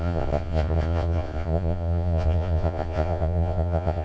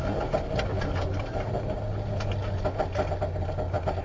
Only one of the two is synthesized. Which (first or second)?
first